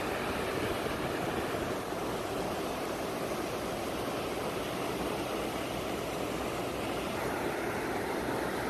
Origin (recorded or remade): recorded